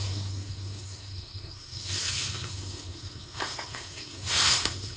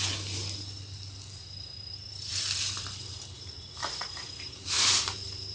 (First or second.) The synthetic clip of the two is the first